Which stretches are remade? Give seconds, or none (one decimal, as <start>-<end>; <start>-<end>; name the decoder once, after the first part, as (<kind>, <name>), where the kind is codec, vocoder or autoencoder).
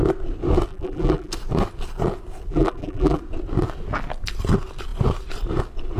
0.7-1.3 (vocoder, BigVGAN v2); 2.5-3.2